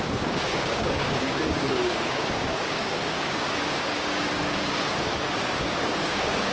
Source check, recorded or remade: remade